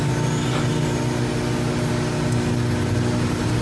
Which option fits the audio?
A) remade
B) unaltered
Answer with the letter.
B